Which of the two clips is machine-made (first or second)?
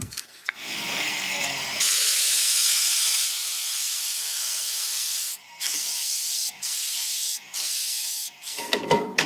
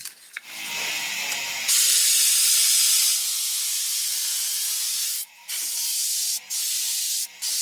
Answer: first